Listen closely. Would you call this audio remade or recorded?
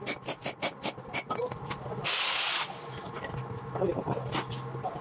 recorded